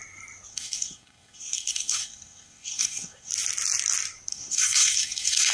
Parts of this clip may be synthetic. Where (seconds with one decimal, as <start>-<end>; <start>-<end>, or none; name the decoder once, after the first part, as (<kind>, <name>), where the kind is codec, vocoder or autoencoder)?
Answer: 0.5-3.3 (codec, SNAC); 4.3-5.5